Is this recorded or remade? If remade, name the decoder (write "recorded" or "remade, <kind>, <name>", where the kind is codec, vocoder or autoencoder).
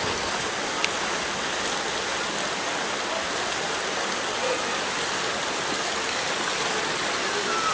recorded